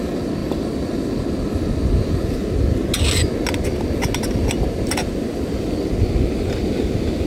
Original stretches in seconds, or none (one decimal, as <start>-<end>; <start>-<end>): 0.0-7.3